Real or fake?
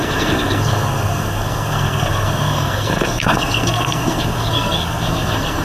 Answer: fake